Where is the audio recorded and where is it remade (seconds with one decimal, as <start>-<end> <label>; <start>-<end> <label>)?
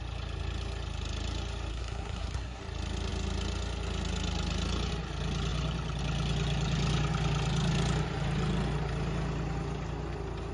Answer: 0.0-1.7 recorded; 1.7-2.6 remade; 2.6-10.5 recorded